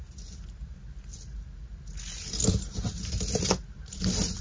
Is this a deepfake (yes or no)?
no